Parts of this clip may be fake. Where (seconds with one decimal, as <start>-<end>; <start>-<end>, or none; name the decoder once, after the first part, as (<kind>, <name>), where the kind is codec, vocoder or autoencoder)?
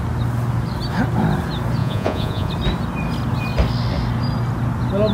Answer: 1.8-2.5 (vocoder, Vocos)